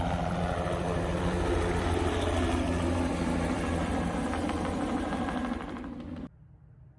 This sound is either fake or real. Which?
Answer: fake